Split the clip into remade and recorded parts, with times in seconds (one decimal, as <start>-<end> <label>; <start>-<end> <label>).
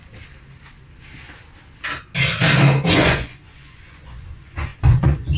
0.0-2.9 recorded; 2.9-5.4 remade